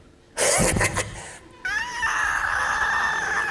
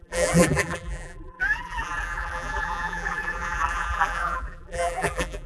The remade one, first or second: second